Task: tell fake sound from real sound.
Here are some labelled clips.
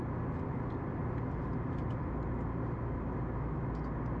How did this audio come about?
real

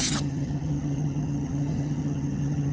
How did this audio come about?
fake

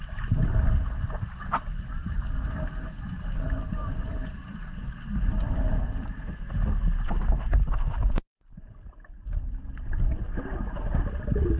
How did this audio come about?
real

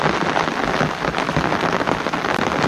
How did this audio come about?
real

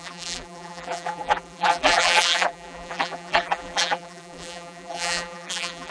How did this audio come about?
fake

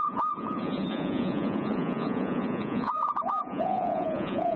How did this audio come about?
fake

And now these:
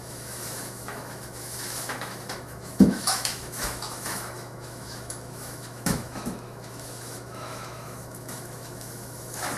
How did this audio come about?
fake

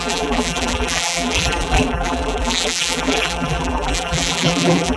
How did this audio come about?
fake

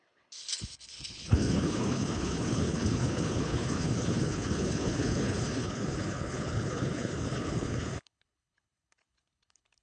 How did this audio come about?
fake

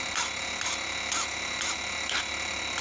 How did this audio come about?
real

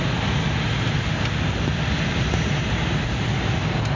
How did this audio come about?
real